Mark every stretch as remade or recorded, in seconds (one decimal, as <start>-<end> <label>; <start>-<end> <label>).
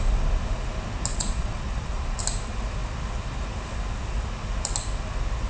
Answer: 0.0-1.1 recorded; 1.1-2.2 remade; 2.2-5.5 recorded